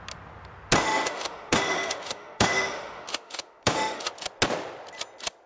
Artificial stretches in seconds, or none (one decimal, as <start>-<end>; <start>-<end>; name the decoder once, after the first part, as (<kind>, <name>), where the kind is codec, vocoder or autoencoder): 0.8-4.1 (autoencoder, DAC-VAE)